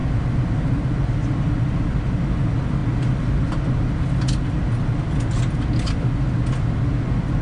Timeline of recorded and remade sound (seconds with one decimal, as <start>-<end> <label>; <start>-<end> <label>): 0.0-7.4 recorded